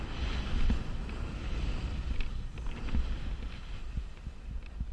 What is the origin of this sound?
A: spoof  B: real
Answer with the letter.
B